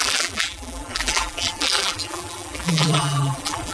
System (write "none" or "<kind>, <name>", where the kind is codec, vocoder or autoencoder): vocoder, BigVGAN v2